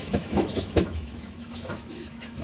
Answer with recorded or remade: remade